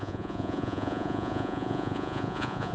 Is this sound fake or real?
fake